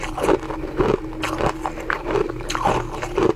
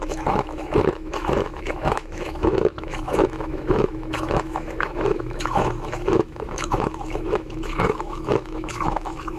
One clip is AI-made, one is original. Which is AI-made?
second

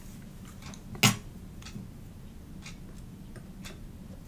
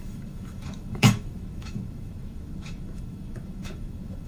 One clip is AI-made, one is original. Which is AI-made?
second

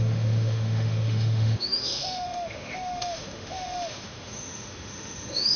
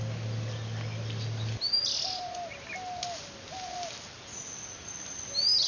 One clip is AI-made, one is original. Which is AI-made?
first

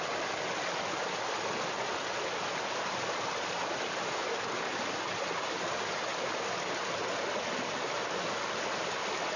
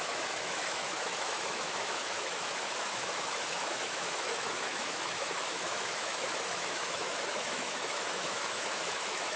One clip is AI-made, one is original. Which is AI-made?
second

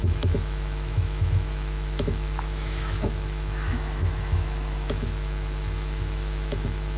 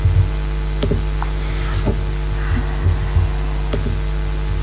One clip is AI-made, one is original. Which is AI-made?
first